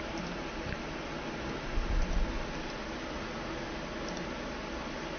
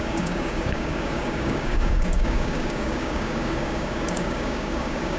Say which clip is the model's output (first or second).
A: second